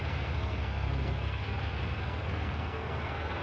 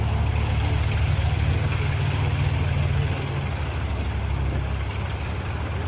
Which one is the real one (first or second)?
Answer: second